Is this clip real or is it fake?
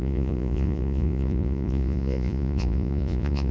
fake